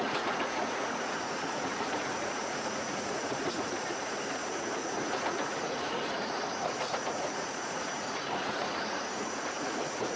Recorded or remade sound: remade